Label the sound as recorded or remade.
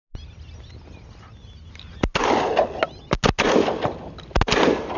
recorded